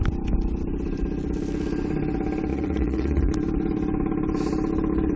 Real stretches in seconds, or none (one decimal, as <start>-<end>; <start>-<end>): 0.0-2.5; 3.3-5.2

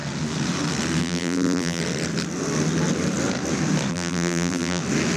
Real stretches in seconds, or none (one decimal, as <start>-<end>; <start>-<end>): 0.0-1.0; 1.8-3.9; 4.8-5.2

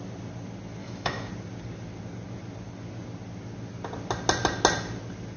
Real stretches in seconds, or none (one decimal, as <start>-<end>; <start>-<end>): 0.0-0.8; 1.3-5.4

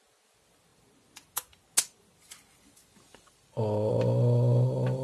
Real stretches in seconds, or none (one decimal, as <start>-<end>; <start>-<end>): 0.0-5.0